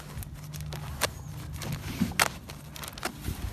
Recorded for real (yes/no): yes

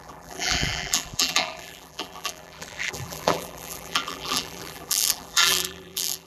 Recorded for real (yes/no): no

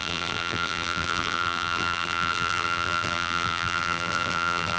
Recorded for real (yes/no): no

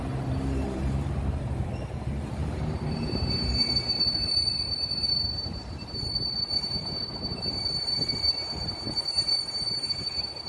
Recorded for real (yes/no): no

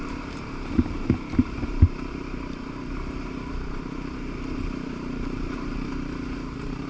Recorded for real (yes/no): no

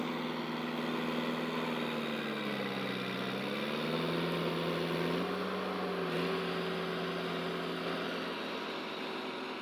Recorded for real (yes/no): yes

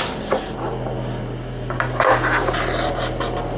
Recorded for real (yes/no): yes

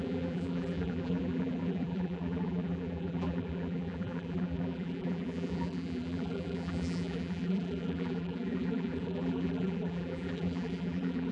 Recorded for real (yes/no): no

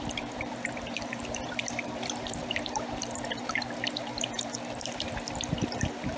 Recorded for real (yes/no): no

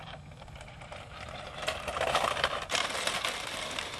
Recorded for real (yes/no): no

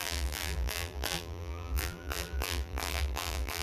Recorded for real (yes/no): no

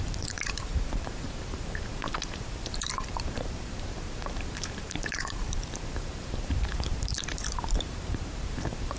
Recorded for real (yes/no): no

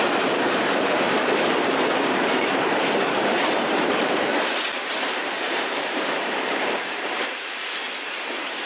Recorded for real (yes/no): no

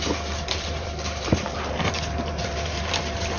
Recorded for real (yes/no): no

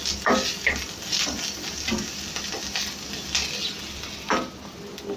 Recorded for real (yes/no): yes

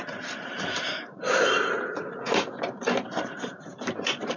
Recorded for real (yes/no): no